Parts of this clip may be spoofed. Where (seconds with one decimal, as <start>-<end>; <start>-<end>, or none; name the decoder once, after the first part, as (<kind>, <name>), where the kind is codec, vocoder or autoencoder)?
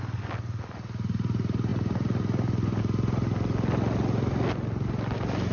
none